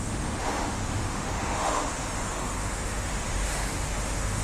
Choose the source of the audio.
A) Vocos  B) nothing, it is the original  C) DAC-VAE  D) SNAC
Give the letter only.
C